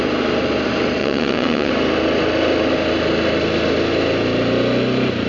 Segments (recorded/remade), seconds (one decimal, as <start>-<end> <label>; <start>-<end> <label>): 0.0-1.0 recorded; 1.0-1.7 remade; 1.7-5.3 recorded